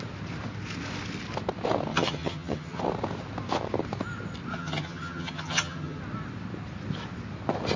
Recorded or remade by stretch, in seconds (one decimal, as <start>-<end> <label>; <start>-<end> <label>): 0.0-1.9 recorded; 1.9-2.8 remade; 2.8-4.5 recorded; 4.5-6.0 remade; 6.0-7.8 recorded